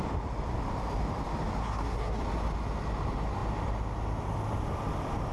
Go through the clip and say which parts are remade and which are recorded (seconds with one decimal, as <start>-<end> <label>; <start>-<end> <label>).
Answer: 0.0-1.6 recorded; 1.6-2.2 remade; 2.2-5.3 recorded